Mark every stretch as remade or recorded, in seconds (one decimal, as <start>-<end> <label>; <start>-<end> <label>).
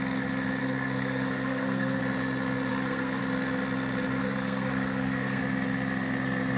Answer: 0.0-0.6 recorded; 0.6-2.0 remade; 2.0-2.7 recorded; 2.7-3.2 remade; 3.2-4.2 recorded; 4.2-5.4 remade; 5.4-6.6 recorded